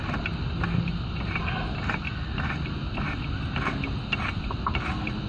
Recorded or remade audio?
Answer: recorded